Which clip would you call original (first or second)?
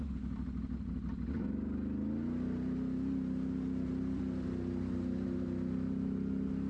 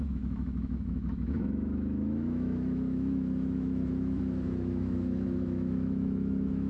first